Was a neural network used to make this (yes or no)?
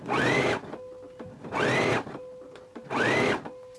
no